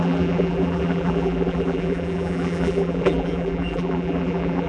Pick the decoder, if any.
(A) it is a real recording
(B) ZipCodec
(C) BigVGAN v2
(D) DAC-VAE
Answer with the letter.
C